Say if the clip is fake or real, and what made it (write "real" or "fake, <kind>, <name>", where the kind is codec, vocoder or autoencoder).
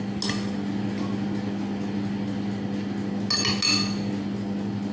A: real